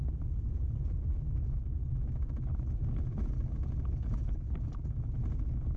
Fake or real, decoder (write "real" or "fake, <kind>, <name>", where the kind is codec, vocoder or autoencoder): real